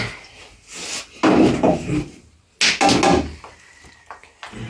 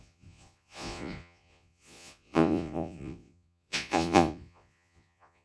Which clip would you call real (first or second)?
first